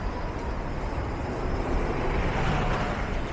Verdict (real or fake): real